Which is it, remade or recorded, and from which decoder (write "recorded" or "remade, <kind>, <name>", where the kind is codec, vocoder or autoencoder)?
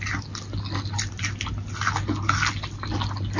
recorded